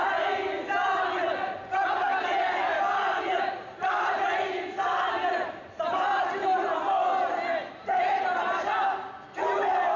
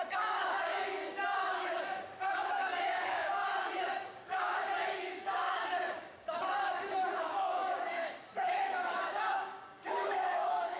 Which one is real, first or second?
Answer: first